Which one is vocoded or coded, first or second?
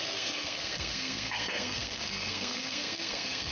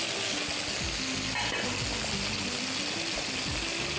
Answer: first